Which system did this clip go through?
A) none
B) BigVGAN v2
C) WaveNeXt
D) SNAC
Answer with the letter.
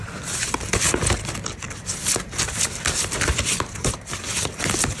B